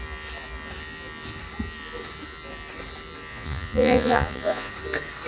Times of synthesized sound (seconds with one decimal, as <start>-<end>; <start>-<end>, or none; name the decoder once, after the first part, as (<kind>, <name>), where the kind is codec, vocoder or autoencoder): 3.3-4.7 (vocoder, Vocos)